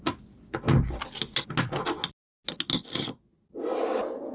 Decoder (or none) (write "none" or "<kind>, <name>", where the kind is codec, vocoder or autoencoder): none